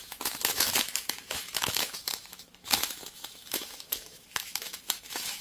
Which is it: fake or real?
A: fake